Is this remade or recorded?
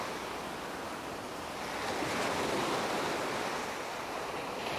recorded